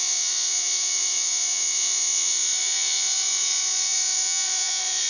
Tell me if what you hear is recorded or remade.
remade